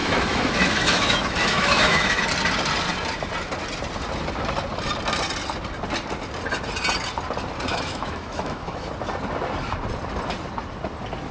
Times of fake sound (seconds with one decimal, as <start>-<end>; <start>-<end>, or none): 0.0-2.2; 7.7-8.9